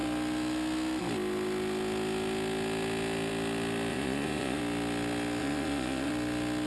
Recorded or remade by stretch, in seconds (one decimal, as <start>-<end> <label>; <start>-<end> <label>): 0.0-3.9 recorded; 3.9-4.6 remade; 4.6-5.4 recorded; 5.4-6.1 remade; 6.1-6.7 recorded